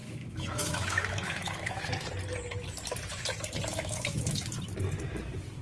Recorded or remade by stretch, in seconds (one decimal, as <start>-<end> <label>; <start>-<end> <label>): 0.0-1.9 remade; 1.9-3.7 recorded; 3.7-4.4 remade; 4.4-5.6 recorded